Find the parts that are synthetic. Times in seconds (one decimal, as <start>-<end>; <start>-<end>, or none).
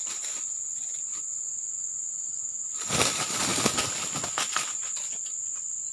1.3-2.0